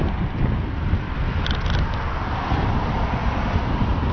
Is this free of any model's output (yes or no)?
yes